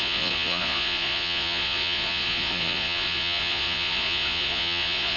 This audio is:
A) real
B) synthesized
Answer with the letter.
B